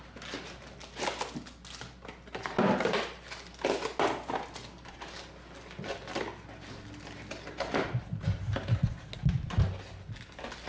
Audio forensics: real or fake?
real